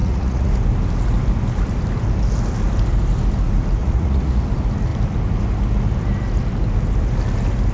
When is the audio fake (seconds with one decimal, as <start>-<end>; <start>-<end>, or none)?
0.0-0.5; 3.8-4.4